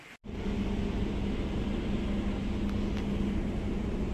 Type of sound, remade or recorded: recorded